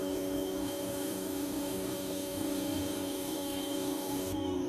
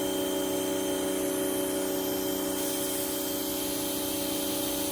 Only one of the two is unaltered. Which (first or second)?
second